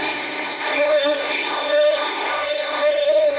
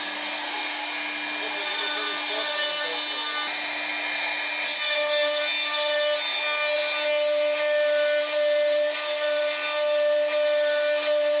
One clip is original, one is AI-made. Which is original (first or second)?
second